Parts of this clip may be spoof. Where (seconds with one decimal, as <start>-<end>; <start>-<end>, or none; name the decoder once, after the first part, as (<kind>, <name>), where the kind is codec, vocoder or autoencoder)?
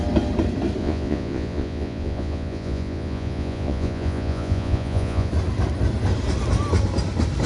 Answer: 0.8-5.3 (vocoder, Vocos)